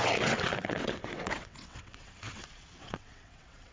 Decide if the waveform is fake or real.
fake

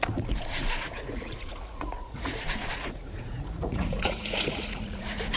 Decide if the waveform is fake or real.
fake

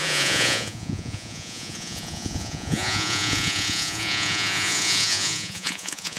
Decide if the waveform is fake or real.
fake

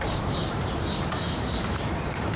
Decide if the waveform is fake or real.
fake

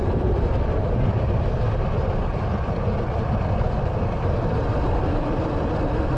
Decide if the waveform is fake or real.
fake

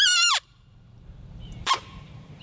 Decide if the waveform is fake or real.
fake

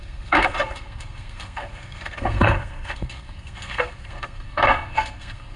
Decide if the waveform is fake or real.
fake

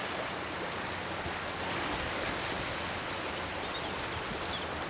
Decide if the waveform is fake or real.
real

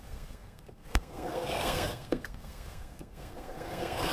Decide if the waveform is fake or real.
fake